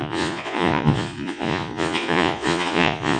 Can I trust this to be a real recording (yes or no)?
no